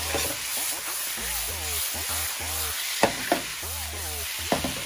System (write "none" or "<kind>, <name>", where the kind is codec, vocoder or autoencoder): none